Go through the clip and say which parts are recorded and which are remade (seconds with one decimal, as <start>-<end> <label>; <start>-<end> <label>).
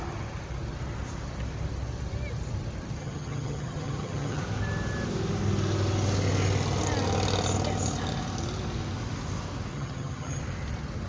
0.0-3.0 recorded; 3.0-4.4 remade; 4.4-9.7 recorded; 9.7-10.4 remade; 10.4-11.1 recorded